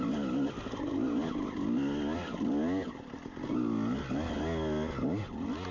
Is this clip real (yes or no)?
yes